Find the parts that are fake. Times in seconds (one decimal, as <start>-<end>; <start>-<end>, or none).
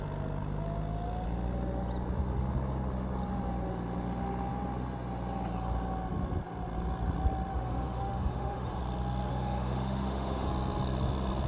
7.5-8.8; 9.3-10.5